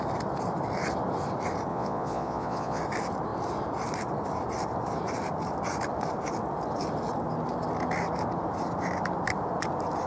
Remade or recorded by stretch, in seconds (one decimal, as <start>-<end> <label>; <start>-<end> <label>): 0.0-1.7 recorded; 1.7-2.8 remade; 2.8-10.1 recorded